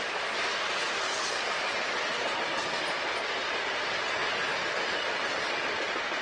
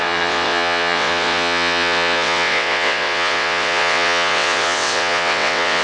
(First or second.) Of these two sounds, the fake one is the second